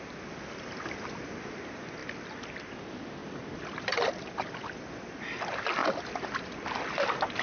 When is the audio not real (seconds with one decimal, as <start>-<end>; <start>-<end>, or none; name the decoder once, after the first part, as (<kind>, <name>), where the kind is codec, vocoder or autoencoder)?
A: 2.0-2.7 (vocoder, BigVGAN v2); 3.2-4.2